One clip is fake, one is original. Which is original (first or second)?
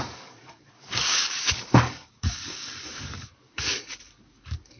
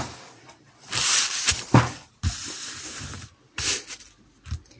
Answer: second